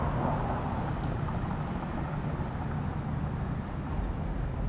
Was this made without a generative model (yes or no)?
yes